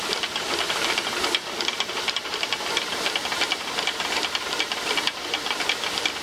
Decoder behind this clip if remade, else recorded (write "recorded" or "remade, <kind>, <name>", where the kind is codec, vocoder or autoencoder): remade, vocoder, BigVGAN v2